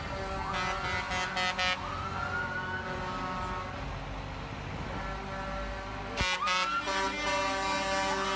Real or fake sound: real